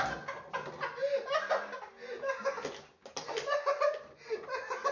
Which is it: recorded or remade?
recorded